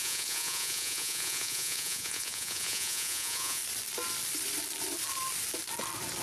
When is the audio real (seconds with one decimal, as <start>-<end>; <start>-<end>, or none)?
3.6-6.2